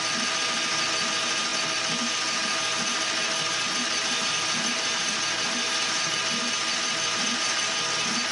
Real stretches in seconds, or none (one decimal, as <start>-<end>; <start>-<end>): 0.0-8.3